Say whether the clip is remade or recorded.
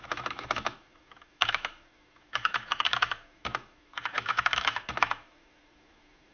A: remade